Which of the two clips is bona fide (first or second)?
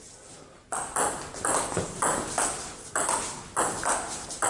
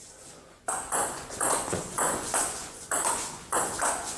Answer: first